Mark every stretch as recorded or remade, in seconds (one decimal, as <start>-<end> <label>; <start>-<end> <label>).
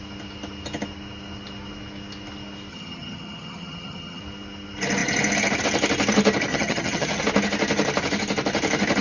0.0-2.7 recorded; 2.7-4.2 remade; 4.2-6.5 recorded; 6.5-7.2 remade; 7.2-9.0 recorded